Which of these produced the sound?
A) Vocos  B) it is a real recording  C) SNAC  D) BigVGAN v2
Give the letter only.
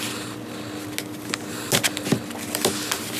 B